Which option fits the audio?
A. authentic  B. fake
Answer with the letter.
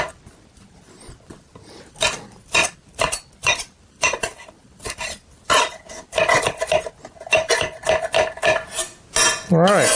A